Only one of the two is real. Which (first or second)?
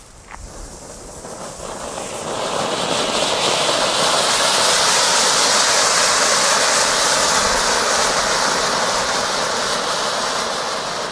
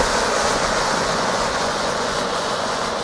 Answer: first